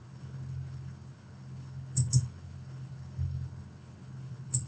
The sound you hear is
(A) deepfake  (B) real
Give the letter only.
A